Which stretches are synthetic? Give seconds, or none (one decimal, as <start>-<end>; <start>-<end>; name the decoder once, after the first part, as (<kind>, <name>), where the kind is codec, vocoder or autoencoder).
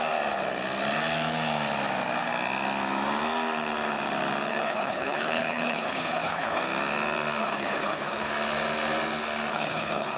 4.5-6.6 (codec, HILCodec); 7.4-8.3; 9.5-10.2